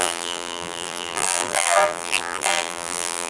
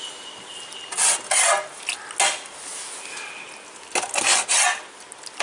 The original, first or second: second